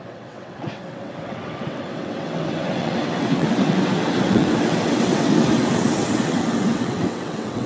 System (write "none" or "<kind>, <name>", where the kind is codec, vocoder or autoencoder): vocoder, WaveNeXt